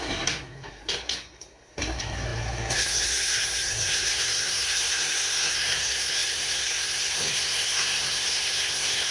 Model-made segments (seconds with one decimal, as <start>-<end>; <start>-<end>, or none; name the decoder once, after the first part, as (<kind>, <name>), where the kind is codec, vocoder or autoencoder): 0.0-9.1 (codec, SNAC)